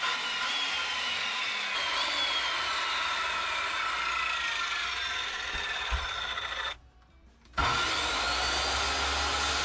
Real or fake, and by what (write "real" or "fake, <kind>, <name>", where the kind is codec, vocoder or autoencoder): real